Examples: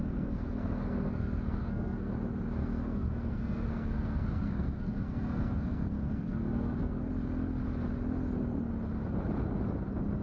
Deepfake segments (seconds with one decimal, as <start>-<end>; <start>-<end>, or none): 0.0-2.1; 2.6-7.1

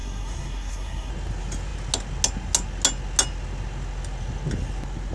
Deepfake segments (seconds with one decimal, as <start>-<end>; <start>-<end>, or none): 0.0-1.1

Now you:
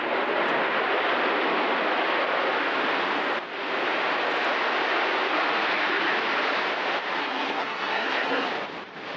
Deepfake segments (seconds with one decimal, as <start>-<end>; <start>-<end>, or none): 7.2-8.5

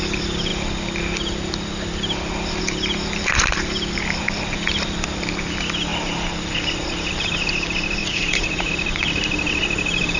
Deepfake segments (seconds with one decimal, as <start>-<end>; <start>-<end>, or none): 8.0-8.7